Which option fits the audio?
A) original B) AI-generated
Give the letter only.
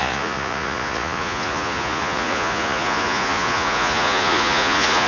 B